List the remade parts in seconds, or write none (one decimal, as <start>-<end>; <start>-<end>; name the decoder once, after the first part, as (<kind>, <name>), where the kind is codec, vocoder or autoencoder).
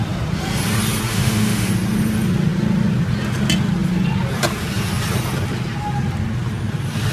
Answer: 1.1-1.7 (autoencoder, DAC-VAE)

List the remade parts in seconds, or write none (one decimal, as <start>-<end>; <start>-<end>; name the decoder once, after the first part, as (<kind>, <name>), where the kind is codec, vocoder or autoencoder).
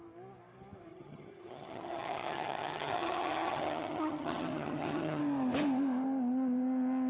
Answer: 0.9-5.2 (vocoder, HiFi-GAN)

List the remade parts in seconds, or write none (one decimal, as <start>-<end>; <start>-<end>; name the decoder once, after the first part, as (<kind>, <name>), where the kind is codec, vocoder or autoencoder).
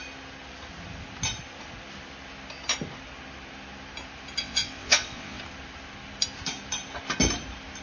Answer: 4.4-5.4 (vocoder, WaveNeXt)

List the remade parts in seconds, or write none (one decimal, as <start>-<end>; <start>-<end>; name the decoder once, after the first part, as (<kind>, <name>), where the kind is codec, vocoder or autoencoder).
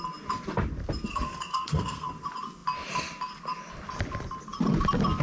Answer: 1.1-2.1 (codec, SNAC)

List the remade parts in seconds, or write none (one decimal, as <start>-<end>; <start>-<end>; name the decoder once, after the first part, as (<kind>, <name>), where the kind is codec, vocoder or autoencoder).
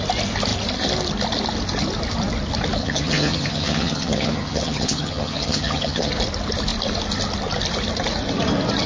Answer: 2.8-6.1 (vocoder, HiFi-GAN)